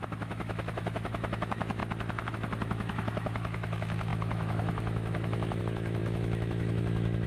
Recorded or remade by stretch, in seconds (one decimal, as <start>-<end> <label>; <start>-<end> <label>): 0.0-1.8 remade; 1.8-2.3 recorded; 2.3-7.3 remade